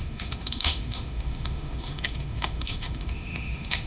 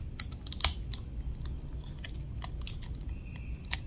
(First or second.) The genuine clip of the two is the second